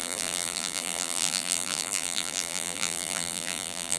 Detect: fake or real fake